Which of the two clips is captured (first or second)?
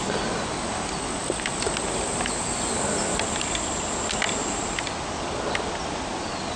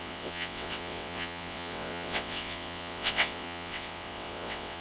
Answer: first